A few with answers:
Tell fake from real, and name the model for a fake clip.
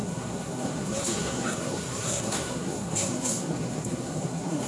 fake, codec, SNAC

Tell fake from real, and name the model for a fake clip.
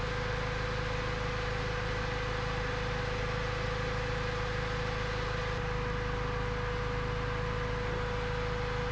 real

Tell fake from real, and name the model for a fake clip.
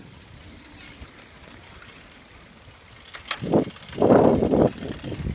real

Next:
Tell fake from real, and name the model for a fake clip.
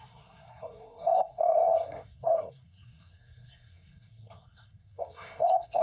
fake, codec, SNAC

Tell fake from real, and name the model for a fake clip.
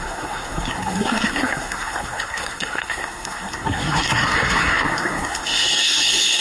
fake, codec, SNAC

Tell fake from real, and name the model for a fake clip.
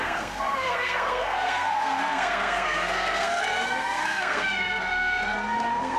fake, codec, SNAC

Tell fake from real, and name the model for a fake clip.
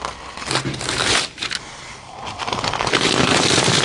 real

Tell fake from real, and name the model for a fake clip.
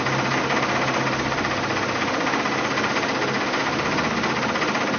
real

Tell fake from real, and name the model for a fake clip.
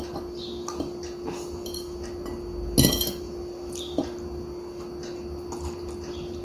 real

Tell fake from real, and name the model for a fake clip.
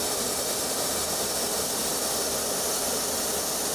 real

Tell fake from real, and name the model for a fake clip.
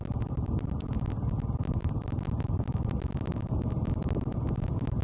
real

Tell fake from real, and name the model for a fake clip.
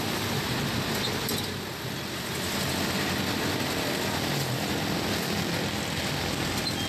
real